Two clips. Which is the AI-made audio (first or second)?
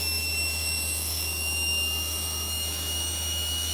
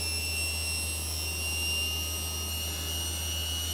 first